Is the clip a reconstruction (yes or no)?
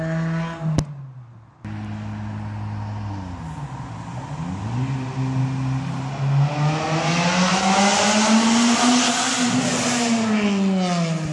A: no